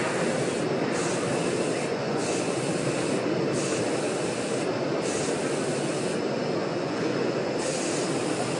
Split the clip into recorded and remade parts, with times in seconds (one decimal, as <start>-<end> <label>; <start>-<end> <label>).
0.0-1.9 recorded; 1.9-2.6 remade; 2.6-6.6 recorded; 6.6-7.5 remade; 7.5-8.6 recorded

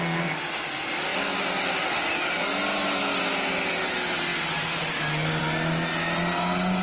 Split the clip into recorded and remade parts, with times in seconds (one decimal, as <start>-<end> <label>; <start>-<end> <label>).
0.0-6.8 recorded

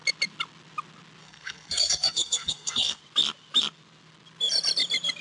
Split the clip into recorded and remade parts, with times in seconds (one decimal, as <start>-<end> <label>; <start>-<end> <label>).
0.0-1.2 recorded; 1.2-3.0 remade; 3.0-5.2 recorded

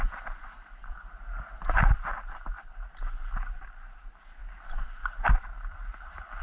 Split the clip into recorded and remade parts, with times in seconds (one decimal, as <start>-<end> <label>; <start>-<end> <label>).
0.0-6.4 recorded

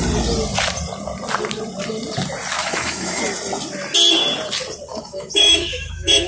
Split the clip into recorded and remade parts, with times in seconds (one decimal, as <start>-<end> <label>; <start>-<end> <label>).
0.0-2.6 recorded; 2.6-3.2 remade; 3.2-4.9 recorded; 4.9-6.3 remade

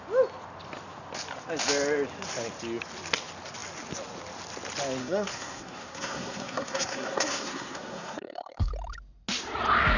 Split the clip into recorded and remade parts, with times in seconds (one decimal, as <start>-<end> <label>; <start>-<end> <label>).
0.0-5.0 recorded; 5.0-8.7 remade; 8.7-10.0 recorded

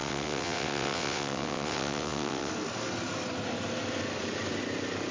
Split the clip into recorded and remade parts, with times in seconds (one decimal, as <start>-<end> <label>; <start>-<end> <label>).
0.0-2.5 remade; 2.5-5.1 recorded